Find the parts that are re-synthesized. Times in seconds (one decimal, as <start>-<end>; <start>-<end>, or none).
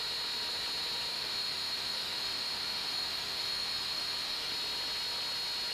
1.1-4.5